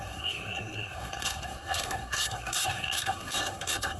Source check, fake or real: fake